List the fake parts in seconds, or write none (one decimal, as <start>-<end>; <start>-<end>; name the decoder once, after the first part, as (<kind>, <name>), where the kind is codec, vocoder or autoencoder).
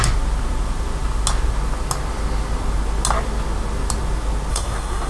4.5-5.1 (codec, SNAC)